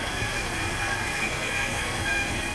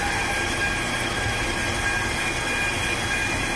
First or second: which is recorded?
second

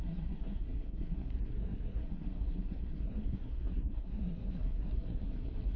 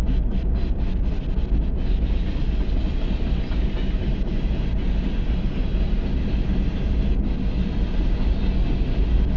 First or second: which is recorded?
second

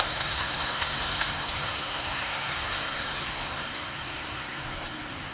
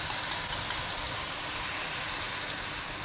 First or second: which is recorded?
second